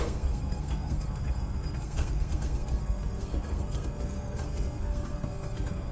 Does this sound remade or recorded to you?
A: remade